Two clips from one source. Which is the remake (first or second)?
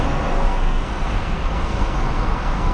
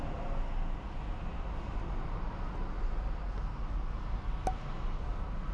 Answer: first